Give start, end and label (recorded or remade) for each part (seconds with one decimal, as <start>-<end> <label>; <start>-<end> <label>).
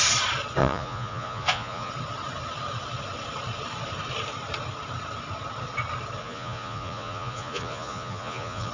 0.0-0.6 recorded; 0.6-1.9 remade; 1.9-6.2 recorded; 6.2-8.7 remade